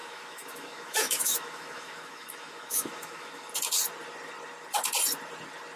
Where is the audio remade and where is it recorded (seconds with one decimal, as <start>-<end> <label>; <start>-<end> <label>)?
0.0-3.5 remade; 3.5-5.8 recorded